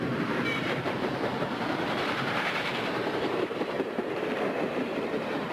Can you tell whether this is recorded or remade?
remade